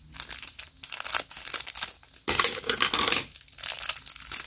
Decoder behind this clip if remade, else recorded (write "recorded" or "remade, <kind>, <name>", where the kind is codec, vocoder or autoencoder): recorded